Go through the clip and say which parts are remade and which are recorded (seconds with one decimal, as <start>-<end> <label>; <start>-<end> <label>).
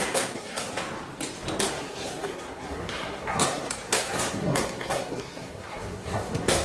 0.0-0.7 remade; 0.7-1.7 recorded; 1.7-6.6 remade